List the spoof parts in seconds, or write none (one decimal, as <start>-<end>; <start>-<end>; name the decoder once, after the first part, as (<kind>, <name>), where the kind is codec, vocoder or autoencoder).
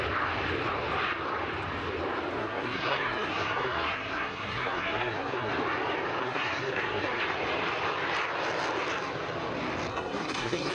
2.4-5.5 (codec, SNAC); 6.2-7.2; 9.9-10.7